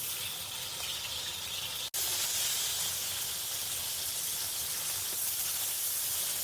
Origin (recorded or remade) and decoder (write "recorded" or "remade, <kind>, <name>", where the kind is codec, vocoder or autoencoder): recorded